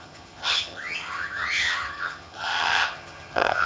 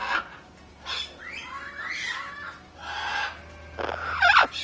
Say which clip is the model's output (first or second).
first